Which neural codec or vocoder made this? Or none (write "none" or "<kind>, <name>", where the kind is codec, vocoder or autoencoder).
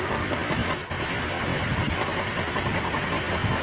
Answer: none